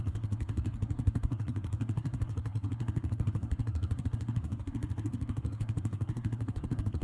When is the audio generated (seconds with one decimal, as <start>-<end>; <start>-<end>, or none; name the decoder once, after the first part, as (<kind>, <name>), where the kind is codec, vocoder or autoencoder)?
0.0-7.0 (codec, SNAC)